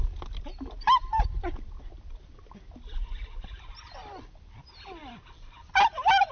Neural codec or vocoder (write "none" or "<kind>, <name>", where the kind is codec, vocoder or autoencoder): none